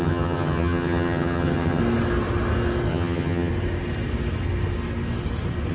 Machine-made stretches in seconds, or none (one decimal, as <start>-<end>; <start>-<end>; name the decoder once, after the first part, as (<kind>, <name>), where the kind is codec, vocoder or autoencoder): 0.0-1.8 (vocoder, HiFi-GAN); 2.9-3.5